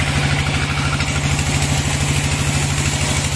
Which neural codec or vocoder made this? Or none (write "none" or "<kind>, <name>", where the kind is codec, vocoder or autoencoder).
none